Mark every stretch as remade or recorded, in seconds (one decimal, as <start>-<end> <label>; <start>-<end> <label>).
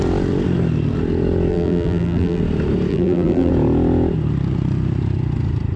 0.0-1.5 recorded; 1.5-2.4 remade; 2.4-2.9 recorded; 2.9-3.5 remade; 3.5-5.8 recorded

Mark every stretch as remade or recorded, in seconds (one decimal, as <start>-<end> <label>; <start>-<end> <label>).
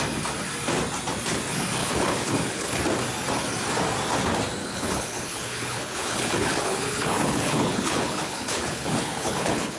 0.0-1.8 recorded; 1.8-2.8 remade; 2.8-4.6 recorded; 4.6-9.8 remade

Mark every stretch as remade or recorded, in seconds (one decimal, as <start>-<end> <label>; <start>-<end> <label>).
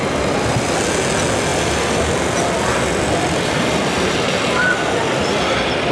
0.0-5.9 recorded